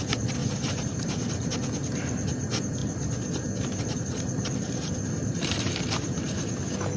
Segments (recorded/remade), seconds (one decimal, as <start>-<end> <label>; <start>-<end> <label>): 0.0-0.4 recorded; 0.4-1.5 remade; 1.5-2.8 recorded; 2.8-6.6 remade; 6.6-7.0 recorded